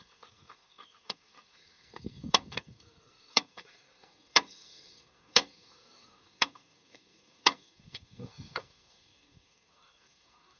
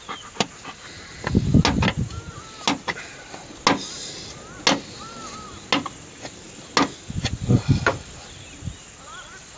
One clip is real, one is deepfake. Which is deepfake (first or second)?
first